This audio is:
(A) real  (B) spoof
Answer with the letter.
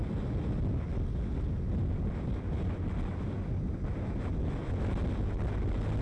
A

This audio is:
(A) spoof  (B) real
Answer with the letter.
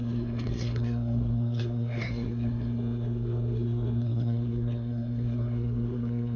A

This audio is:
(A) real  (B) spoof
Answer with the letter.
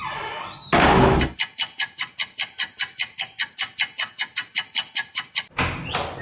A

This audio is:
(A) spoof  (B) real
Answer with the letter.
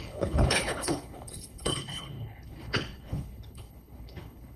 A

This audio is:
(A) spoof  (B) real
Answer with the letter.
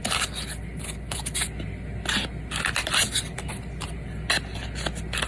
B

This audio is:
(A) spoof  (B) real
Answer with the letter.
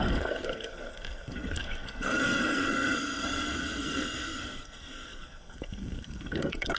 A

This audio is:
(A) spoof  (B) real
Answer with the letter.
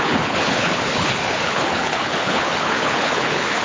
A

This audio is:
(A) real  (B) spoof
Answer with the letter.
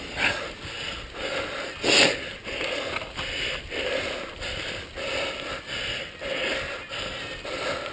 A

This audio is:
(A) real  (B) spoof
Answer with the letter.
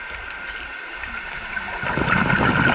B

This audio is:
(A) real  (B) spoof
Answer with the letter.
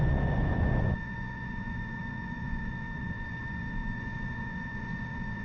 B